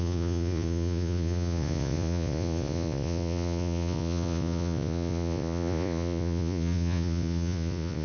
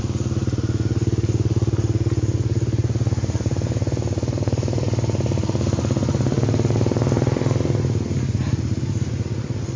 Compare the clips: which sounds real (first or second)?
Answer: second